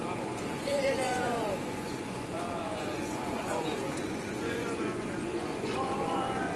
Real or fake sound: fake